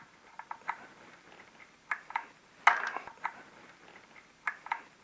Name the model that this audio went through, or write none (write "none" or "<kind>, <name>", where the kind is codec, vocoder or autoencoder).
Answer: none